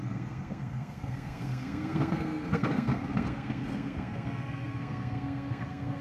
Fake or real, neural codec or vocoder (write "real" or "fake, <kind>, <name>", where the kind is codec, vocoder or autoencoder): fake, codec, SNAC